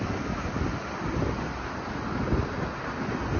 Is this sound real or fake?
real